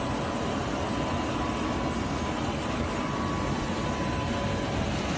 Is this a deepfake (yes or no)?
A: no